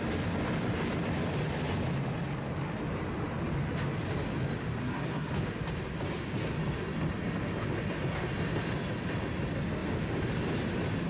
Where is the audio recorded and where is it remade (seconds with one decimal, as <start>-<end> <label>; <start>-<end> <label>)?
0.0-4.8 recorded; 4.8-5.3 remade; 5.3-11.1 recorded